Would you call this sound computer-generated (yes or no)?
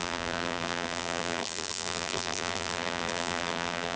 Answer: yes